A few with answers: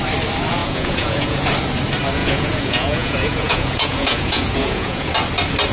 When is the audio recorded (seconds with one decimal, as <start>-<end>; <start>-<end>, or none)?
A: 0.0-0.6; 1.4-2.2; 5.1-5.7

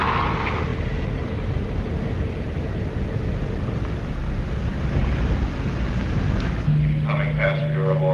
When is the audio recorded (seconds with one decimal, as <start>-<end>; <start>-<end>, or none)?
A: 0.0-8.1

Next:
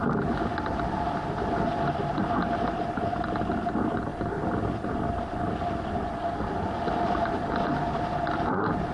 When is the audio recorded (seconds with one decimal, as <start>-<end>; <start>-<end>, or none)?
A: 0.0-8.9

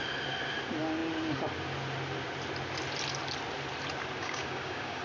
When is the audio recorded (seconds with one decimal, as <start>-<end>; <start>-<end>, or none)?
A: 0.0-4.2

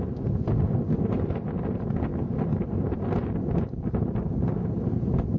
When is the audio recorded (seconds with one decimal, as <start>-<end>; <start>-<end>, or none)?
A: 0.0-5.4

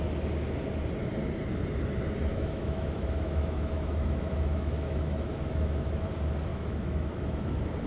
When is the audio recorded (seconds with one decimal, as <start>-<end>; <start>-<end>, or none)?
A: 0.0-2.3; 6.1-6.5; 7.5-7.9

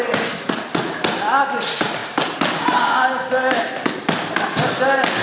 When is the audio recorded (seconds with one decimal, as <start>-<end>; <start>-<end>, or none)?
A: 0.0-5.2

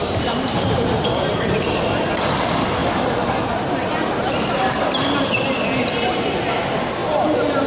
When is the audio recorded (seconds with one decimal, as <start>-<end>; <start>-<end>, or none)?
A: 1.7-2.8; 5.6-7.0